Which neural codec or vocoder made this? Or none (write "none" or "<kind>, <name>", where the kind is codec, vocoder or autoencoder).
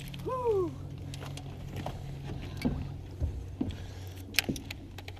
none